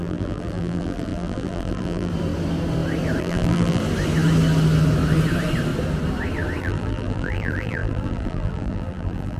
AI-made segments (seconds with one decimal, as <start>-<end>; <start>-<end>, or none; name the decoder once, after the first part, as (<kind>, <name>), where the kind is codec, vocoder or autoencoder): 0.0-2.1 (vocoder, BigVGAN v2); 3.2-3.8; 6.6-9.4